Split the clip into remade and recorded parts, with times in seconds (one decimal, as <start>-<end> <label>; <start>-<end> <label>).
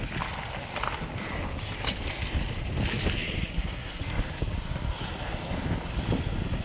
0.0-3.5 recorded; 3.5-4.0 remade; 4.0-6.6 recorded